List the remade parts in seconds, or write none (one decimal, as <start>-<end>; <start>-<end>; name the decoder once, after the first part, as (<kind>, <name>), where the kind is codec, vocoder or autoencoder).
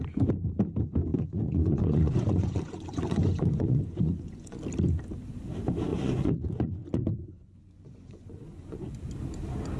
1.1-4.6 (vocoder, Vocos); 5.9-8.9